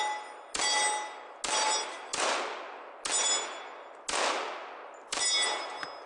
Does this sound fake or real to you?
real